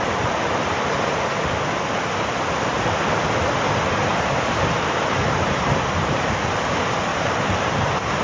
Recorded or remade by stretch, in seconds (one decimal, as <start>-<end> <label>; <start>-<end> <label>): 0.0-4.1 recorded; 4.1-5.7 remade; 5.7-7.1 recorded; 7.1-8.2 remade